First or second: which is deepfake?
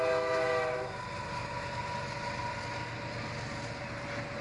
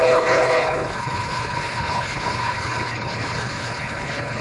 second